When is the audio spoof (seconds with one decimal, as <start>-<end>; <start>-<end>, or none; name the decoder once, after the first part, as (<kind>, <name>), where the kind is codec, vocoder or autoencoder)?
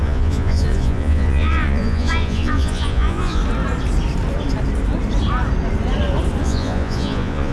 0.0-3.4 (vocoder, Vocos); 6.4-7.5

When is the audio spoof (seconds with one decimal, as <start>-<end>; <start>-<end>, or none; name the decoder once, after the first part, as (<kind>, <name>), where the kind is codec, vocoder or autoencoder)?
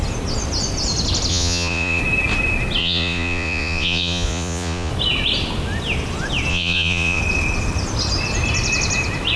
1.3-2.0 (vocoder, Vocos); 2.8-4.9; 6.5-7.2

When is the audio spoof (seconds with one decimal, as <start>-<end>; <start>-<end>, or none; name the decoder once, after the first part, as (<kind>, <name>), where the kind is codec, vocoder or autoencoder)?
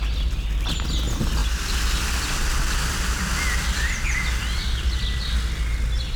none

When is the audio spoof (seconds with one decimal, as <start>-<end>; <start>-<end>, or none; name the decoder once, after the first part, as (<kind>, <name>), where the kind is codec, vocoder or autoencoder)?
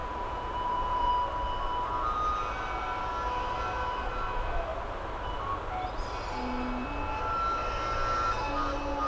0.0-1.1 (vocoder, Vocos)